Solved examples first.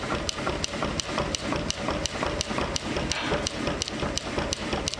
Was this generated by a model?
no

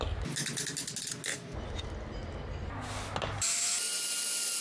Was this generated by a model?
no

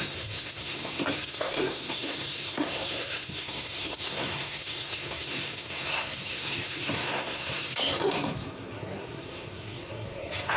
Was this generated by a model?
yes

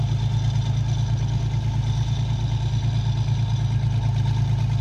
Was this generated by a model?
no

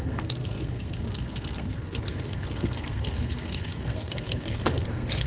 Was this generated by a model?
yes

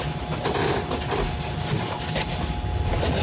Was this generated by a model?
no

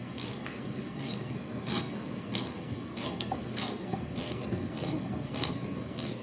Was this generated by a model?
yes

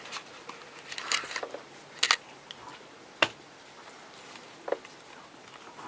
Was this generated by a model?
no